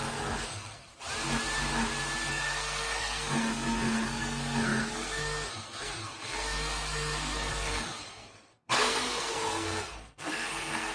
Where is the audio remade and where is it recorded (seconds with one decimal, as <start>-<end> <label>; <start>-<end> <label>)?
0.0-0.9 remade; 0.9-2.3 recorded; 2.3-10.9 remade